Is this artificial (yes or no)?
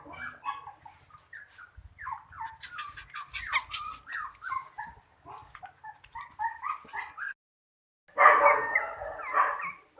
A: no